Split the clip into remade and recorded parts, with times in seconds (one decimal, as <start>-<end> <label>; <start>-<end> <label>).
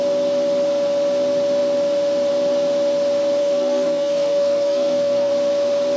0.0-3.4 recorded; 3.4-5.3 remade; 5.3-6.0 recorded